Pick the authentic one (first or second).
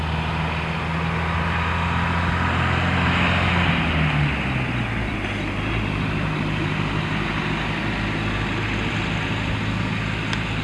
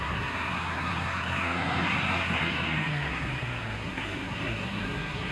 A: first